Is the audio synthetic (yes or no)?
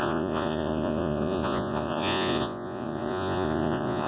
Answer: yes